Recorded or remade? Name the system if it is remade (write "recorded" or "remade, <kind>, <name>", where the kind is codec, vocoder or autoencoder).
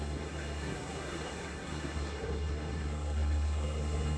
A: remade, codec, SNAC